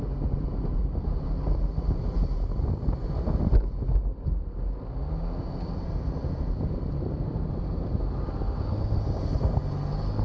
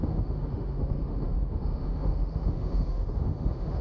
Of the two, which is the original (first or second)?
first